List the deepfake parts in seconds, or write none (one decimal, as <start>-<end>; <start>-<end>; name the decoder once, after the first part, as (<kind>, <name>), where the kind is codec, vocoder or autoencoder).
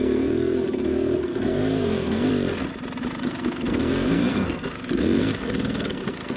0.0-2.3 (codec, SNAC); 3.2-6.4